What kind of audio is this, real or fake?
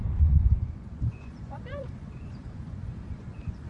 fake